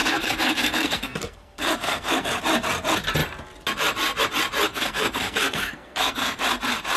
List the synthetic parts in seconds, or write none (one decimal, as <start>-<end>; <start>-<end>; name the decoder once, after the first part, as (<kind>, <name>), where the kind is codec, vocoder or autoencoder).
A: 0.0-2.4 (codec, SNAC); 4.7-6.4